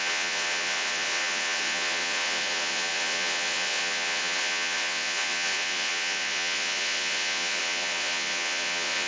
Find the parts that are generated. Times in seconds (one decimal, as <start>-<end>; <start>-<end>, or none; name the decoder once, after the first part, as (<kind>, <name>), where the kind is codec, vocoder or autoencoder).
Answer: 0.0-9.1 (vocoder, Vocos)